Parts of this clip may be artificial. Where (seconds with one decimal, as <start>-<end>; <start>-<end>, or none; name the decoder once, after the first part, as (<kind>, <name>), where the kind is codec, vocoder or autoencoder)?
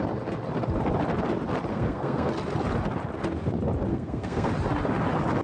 1.7-2.3 (codec, SNAC); 3.9-4.5